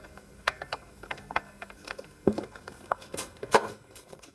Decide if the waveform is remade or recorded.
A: remade